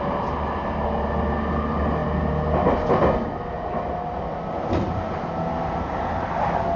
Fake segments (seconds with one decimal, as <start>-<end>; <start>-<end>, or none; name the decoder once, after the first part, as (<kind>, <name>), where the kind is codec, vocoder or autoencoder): none